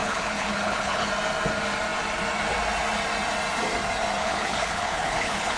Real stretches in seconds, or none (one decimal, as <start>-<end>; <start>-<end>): 1.1-4.2